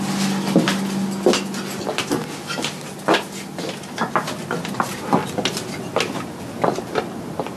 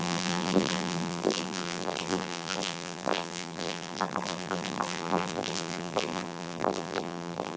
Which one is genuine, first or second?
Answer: first